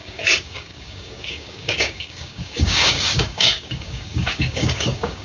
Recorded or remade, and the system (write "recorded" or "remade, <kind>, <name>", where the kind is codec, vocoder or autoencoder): remade, codec, DAC